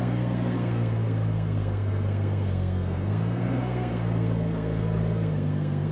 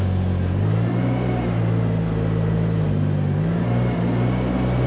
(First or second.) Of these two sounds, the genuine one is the second